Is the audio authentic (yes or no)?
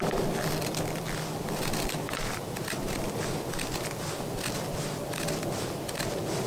no